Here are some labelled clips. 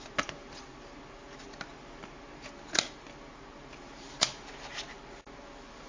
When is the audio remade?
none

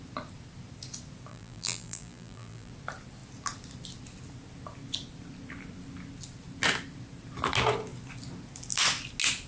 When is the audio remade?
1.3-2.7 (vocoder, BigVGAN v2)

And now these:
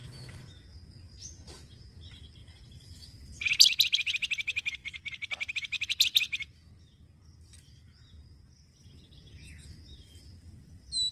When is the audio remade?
2.4-3.3 (vocoder, BigVGAN v2)

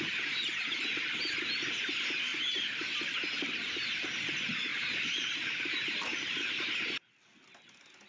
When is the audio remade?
4.7-5.3 (vocoder, BigVGAN v2); 6.1-6.7

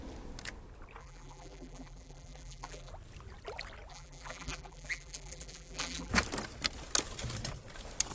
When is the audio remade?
1.0-2.9 (vocoder, BigVGAN v2); 3.9-6.1

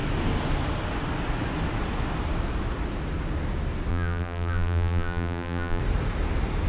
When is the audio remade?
3.9-5.8 (vocoder, BigVGAN v2)

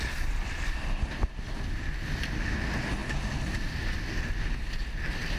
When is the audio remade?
none